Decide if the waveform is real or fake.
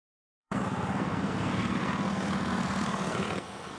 fake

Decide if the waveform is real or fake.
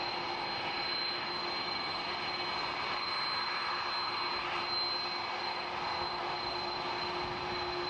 real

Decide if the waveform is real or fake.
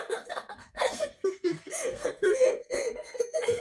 fake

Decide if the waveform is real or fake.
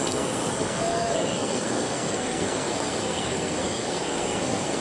fake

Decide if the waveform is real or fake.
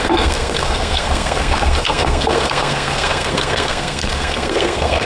fake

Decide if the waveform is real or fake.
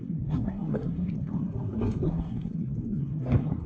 fake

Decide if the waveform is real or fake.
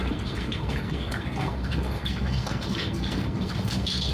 fake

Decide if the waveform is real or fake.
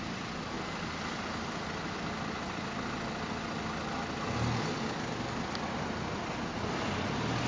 real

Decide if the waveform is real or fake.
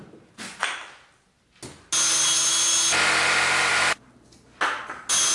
real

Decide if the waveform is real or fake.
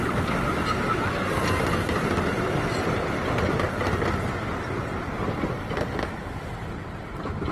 real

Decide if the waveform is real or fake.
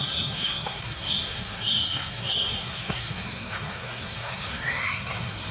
fake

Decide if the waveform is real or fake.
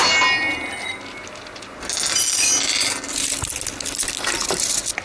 real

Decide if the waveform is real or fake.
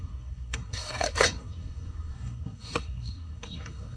fake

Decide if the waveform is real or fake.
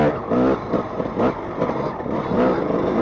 real